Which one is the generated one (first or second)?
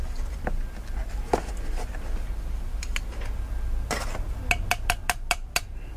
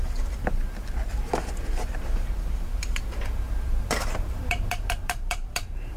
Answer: second